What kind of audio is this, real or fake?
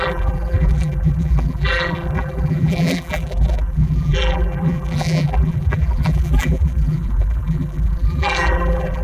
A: fake